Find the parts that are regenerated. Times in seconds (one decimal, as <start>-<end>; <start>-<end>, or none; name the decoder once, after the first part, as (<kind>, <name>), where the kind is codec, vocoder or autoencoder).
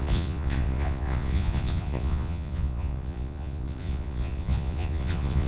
0.0-5.5 (vocoder, Vocos)